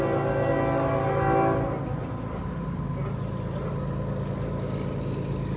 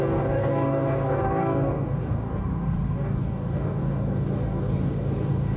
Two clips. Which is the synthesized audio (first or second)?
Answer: second